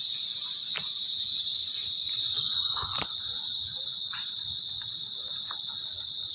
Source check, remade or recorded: remade